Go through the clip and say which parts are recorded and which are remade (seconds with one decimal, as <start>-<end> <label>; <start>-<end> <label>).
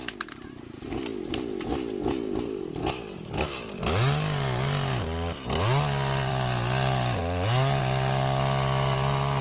0.0-9.4 recorded